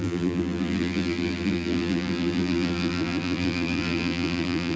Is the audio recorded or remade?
remade